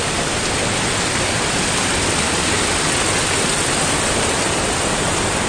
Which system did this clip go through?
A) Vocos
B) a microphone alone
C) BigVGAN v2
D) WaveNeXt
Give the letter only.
B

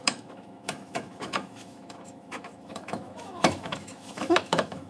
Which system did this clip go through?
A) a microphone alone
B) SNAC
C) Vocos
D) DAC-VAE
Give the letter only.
D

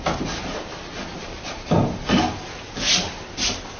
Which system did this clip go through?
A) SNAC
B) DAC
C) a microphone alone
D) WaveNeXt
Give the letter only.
C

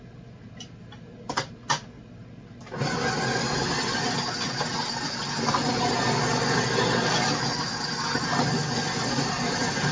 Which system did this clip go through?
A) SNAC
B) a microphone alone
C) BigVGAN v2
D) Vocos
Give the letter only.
B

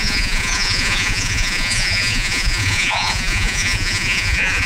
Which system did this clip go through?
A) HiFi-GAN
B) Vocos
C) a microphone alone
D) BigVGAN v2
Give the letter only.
B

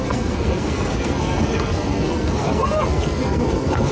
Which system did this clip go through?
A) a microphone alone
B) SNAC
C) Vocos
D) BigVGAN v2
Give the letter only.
B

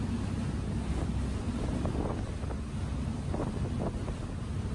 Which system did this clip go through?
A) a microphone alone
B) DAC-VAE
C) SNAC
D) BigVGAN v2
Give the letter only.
A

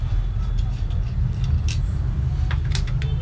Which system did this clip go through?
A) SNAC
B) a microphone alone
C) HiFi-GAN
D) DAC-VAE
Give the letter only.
B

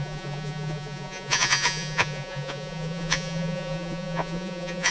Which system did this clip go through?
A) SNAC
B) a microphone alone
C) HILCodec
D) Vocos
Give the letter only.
D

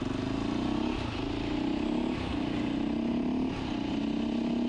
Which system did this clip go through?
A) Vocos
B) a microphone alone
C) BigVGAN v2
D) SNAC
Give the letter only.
B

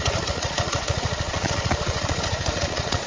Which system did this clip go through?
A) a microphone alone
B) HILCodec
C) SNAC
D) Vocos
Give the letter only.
D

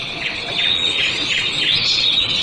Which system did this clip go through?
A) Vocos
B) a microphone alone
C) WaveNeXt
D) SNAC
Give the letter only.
C